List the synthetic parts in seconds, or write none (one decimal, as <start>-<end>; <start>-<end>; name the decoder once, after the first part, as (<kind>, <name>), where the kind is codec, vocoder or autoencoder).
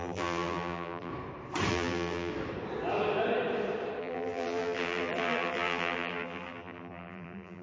0.0-1.1 (vocoder, BigVGAN v2); 1.7-2.3; 4.0-7.6